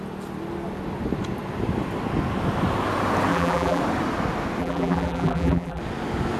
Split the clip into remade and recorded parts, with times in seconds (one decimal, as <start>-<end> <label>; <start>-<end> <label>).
0.0-3.3 recorded; 3.3-3.8 remade; 3.8-4.6 recorded; 4.6-5.8 remade; 5.8-6.4 recorded